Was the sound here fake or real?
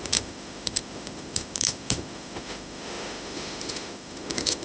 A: fake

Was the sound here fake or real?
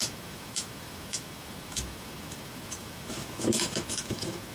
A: fake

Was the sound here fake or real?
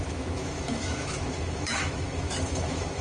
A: fake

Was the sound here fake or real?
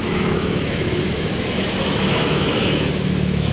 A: fake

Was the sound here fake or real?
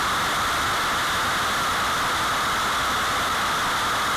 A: real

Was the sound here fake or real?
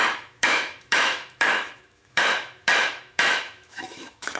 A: fake